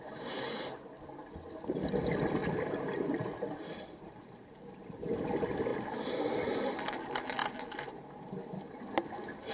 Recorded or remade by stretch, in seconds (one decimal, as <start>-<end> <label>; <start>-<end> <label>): 0.0-9.5 recorded